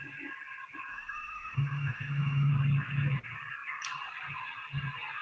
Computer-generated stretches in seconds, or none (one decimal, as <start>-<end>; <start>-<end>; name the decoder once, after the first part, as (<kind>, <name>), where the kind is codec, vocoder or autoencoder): 0.9-2.5 (autoencoder, DAC-VAE)